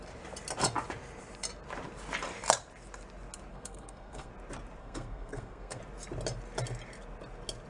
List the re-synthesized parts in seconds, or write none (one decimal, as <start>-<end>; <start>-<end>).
3.5-4.3; 4.8-5.8

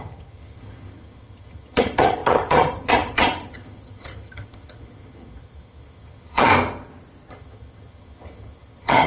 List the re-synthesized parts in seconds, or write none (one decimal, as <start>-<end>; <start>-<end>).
0.0-6.5; 7.3-9.1

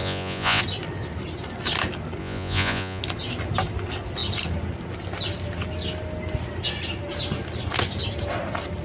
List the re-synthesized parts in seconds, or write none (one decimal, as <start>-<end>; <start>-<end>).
0.0-0.6; 2.2-3.0

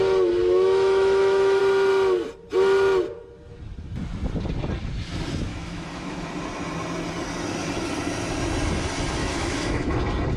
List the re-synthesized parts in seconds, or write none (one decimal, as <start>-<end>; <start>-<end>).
0.4-1.6; 5.5-6.3; 9.2-10.0

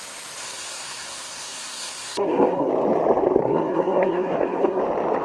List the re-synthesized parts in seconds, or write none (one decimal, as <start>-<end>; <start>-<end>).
0.4-2.7; 3.4-4.8